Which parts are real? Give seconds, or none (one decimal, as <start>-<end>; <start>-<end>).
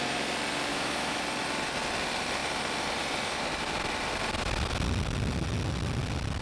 0.0-0.7; 1.2-6.4